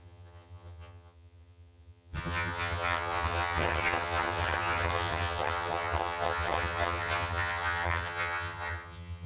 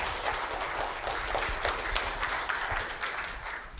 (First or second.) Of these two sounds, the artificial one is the first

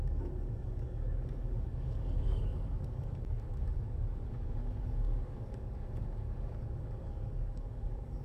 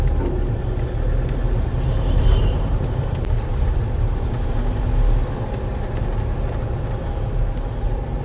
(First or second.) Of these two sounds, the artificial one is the first